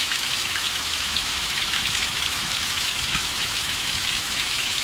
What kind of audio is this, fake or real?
fake